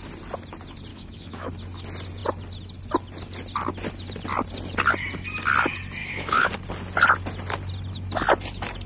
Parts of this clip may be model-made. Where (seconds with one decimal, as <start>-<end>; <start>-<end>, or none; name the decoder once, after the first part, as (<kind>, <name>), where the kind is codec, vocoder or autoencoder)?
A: 0.9-1.5 (autoencoder, DAC-VAE); 6.0-6.5